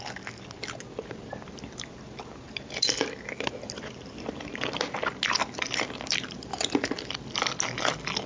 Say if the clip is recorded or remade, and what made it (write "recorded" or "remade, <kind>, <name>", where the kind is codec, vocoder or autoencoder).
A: recorded